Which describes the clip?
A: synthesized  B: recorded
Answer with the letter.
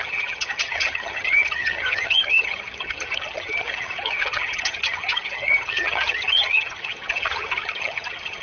A